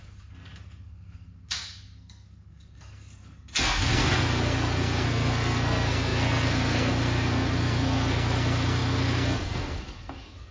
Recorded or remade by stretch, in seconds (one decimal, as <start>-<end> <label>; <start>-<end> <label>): 0.0-10.5 remade